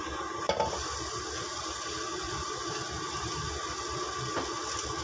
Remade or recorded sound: recorded